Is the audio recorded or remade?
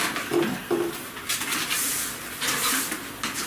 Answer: recorded